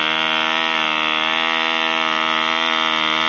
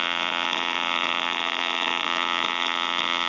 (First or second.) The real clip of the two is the first